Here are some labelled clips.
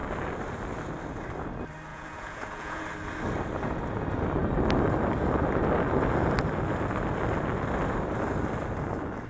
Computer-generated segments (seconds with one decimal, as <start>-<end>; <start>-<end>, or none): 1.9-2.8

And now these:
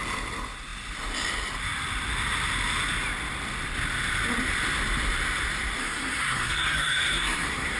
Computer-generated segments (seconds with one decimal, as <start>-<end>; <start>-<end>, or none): 5.8-7.8

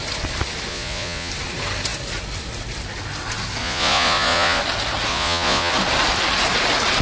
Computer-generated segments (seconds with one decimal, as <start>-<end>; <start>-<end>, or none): 0.7-1.3; 3.6-4.6; 5.1-5.7

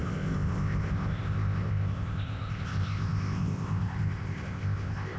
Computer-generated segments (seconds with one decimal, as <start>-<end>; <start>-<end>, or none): 0.0-5.2

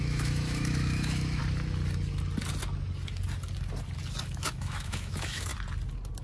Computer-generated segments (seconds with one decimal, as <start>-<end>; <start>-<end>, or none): 0.0-1.4; 4.2-5.5

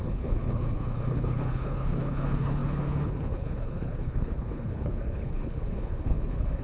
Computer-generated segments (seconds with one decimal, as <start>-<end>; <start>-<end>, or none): 0.0-6.6

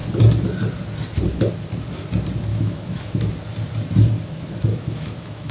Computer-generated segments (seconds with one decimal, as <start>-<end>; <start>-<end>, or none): 2.5-3.3; 4.7-5.5

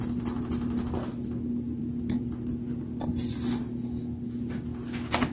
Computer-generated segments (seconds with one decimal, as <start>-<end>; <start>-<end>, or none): none